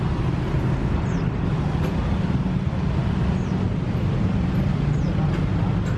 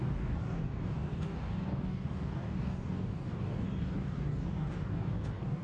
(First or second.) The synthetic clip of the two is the second